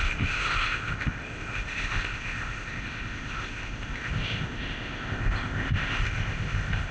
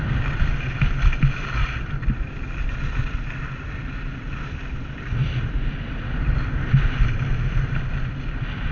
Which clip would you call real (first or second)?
second